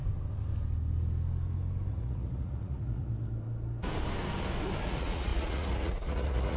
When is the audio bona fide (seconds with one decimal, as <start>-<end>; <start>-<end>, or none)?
0.0-1.9; 3.1-4.8